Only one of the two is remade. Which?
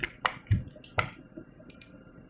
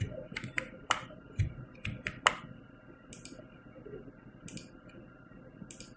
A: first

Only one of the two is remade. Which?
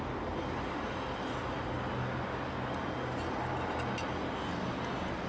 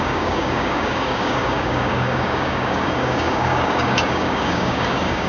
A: second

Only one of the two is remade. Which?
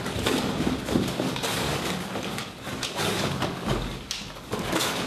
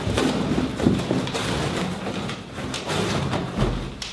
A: first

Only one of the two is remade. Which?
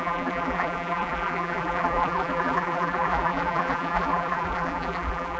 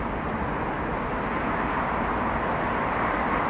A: first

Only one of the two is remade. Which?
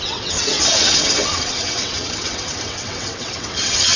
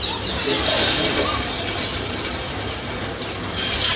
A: first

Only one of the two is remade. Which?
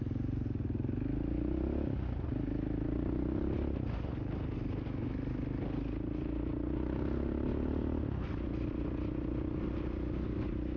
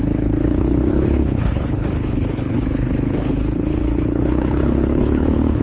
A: second